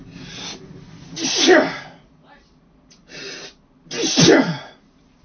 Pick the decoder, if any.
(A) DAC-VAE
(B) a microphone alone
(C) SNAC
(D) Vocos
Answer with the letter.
B